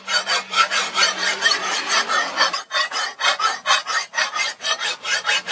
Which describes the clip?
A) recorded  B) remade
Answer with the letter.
B